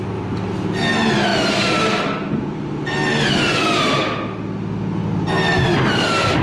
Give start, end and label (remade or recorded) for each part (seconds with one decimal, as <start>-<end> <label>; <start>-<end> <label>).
0.0-6.4 recorded